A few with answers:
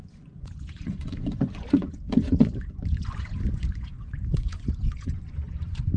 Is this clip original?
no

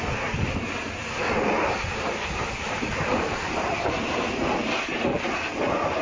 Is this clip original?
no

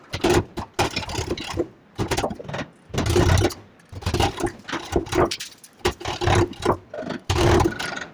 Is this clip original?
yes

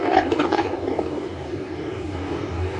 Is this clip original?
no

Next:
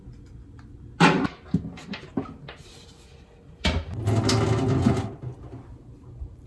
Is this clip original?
yes